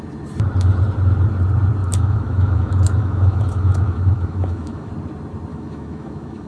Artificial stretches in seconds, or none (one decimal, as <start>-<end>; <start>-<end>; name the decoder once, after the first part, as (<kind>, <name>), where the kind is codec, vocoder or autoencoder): 1.8-4.9 (autoencoder, DAC-VAE); 5.5-6.5